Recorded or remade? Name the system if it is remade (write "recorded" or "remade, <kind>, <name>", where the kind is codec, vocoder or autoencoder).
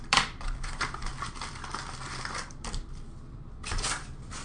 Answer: remade, vocoder, BigVGAN v2